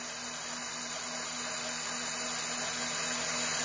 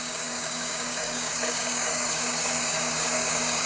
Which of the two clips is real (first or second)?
first